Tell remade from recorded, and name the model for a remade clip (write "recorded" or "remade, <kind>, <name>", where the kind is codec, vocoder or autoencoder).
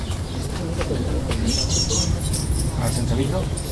recorded